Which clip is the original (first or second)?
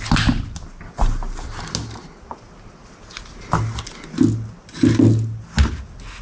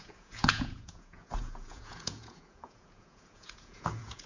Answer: first